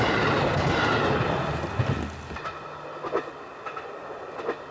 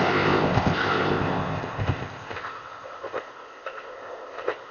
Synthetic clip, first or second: second